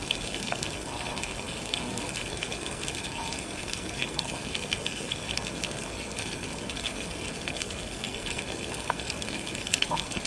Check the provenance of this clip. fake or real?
fake